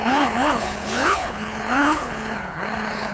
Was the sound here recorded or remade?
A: remade